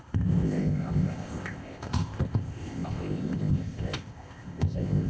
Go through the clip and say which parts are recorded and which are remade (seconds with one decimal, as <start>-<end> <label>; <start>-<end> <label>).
0.0-5.1 remade